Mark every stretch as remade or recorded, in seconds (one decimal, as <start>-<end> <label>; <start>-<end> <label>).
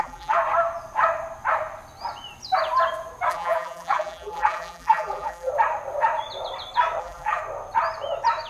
0.0-0.4 remade; 0.4-3.3 recorded; 3.3-5.5 remade; 5.5-7.0 recorded; 7.0-7.4 remade; 7.4-8.5 recorded